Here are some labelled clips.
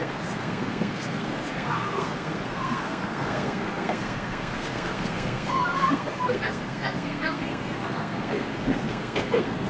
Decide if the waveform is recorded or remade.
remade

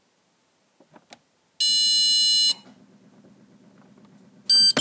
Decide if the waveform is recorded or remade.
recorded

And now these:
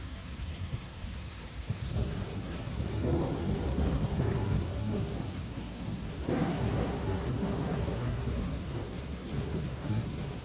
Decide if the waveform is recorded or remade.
remade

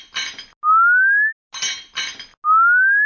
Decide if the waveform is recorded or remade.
recorded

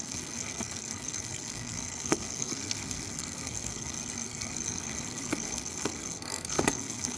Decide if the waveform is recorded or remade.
remade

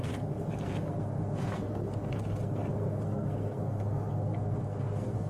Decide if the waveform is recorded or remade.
remade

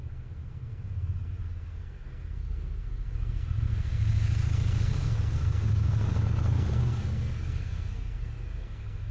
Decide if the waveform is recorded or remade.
remade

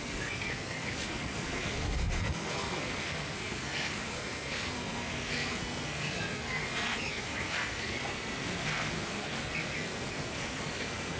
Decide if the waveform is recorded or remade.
remade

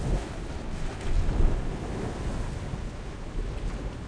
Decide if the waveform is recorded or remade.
recorded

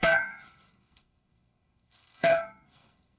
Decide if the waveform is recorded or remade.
remade